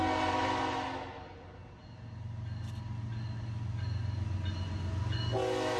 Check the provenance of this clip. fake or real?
real